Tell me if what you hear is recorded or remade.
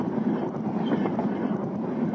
recorded